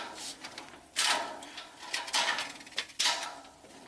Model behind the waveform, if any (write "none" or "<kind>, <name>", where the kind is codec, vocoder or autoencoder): none